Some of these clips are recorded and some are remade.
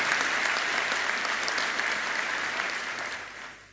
remade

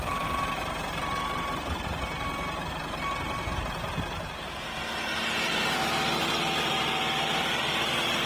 remade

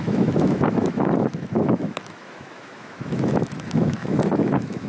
remade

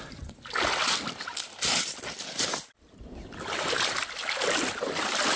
recorded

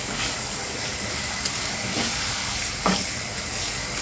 remade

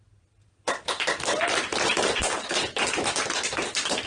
recorded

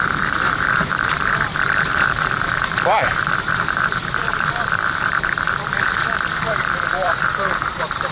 remade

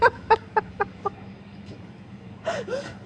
remade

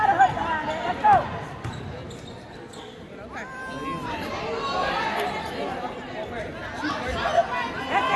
recorded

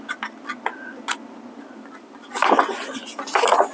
recorded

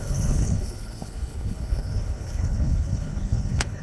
remade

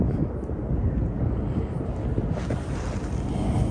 recorded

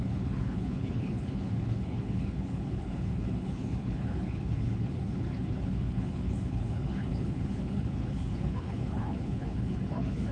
remade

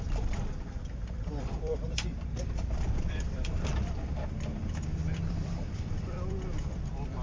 remade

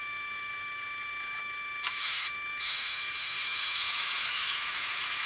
remade